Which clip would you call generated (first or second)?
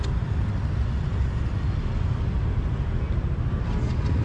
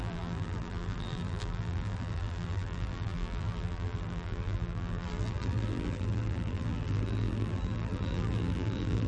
second